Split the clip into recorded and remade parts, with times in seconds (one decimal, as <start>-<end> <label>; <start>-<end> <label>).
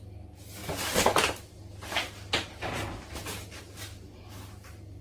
0.0-5.0 recorded